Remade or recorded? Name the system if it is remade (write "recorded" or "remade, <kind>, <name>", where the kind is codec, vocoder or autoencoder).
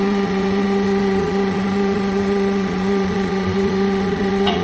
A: remade, vocoder, Vocos